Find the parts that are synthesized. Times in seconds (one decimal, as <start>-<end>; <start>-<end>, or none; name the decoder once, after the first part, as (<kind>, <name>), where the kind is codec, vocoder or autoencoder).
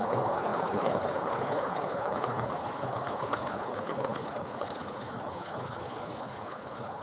0.0-7.0 (codec, HILCodec)